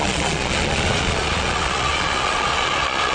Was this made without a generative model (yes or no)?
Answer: no